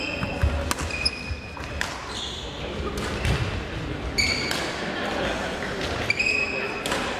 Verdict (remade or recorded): recorded